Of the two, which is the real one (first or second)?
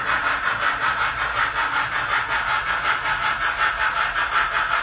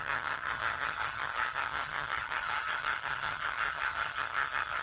first